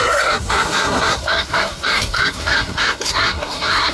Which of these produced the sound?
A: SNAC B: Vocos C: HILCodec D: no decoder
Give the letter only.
A